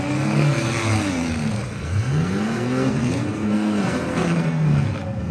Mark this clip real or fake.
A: fake